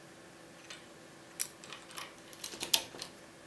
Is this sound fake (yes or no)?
no